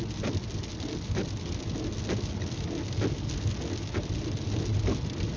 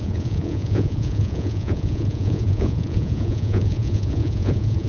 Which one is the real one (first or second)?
first